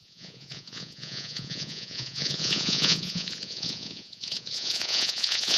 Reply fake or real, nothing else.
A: fake